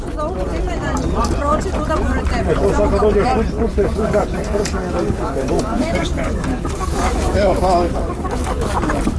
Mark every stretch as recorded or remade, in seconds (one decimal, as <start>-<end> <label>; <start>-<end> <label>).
0.0-3.7 recorded; 3.7-8.7 remade; 8.7-9.2 recorded